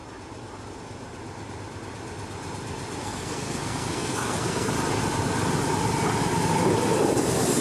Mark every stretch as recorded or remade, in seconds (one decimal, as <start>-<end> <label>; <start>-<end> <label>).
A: 0.0-3.0 recorded; 3.0-4.7 remade; 4.7-7.6 recorded